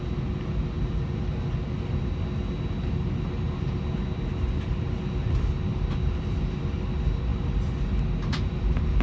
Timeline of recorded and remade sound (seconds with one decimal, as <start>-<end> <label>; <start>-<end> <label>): 0.0-9.0 recorded